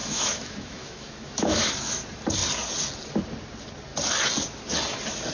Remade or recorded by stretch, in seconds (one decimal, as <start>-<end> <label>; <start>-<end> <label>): 0.0-1.7 remade; 1.7-5.3 recorded